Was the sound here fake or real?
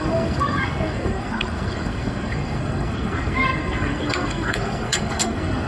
fake